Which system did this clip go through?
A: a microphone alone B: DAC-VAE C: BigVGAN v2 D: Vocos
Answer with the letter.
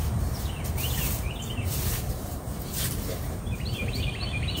C